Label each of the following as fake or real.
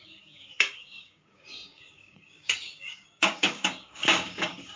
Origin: fake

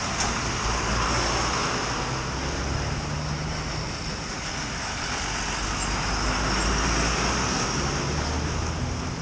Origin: real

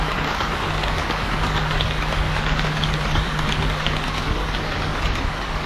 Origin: fake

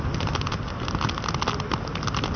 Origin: real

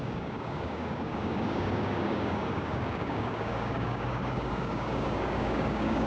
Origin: fake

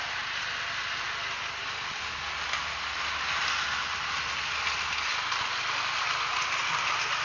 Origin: real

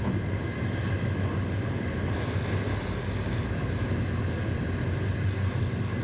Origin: real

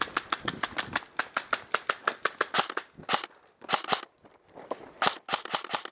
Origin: real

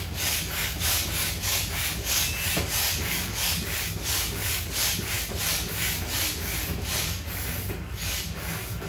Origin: fake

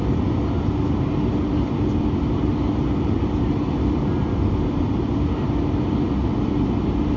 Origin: real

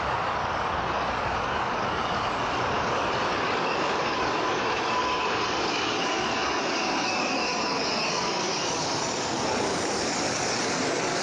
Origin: fake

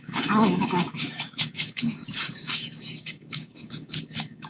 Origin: fake